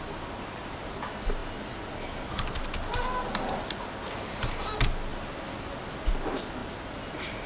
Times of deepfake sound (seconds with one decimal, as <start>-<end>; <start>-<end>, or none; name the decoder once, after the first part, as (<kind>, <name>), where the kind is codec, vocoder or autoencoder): none